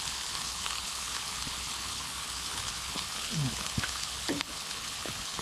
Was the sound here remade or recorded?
remade